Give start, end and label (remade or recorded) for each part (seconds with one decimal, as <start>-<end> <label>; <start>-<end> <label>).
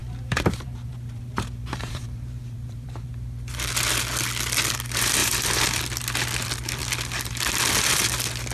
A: 0.0-3.1 remade; 3.1-5.2 recorded; 5.2-5.8 remade; 5.8-8.5 recorded